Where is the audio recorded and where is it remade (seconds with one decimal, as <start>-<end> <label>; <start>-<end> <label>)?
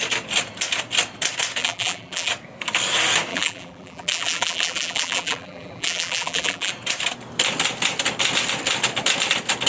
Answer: 0.0-1.6 recorded; 1.6-2.3 remade; 2.3-3.3 recorded; 3.3-6.7 remade; 6.7-9.7 recorded